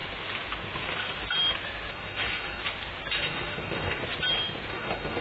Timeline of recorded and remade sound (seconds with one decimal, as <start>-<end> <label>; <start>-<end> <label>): 0.0-1.9 recorded; 1.9-2.6 remade; 2.6-3.2 recorded; 3.2-4.0 remade; 4.0-4.7 recorded; 4.7-5.2 remade